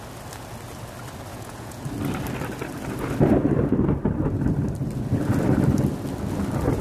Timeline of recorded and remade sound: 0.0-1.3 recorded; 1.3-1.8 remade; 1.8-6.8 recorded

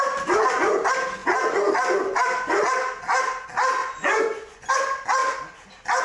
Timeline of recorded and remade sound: 0.0-3.8 recorded; 3.8-4.7 remade; 4.7-6.0 recorded

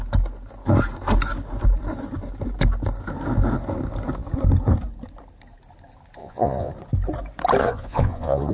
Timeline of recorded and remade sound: 0.0-6.2 recorded; 6.2-6.7 remade; 6.7-7.6 recorded; 7.6-8.5 remade

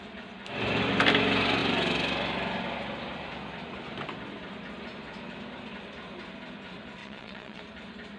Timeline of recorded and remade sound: 0.0-7.0 recorded; 7.0-7.6 remade; 7.6-8.2 recorded

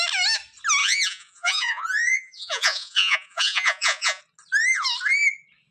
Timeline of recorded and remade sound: 0.0-0.8 recorded; 0.8-4.2 remade; 4.2-5.7 recorded